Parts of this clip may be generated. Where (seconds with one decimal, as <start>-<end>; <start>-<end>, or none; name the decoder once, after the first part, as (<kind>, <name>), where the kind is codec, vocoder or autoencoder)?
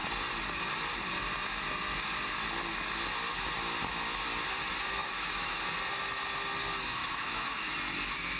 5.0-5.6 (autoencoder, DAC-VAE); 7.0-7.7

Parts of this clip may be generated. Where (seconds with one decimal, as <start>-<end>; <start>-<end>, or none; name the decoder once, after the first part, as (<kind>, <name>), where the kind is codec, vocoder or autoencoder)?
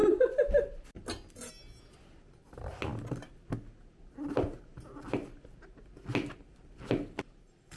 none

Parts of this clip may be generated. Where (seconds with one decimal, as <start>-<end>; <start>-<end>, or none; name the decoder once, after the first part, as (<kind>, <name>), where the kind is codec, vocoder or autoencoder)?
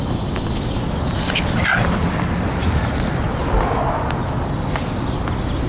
none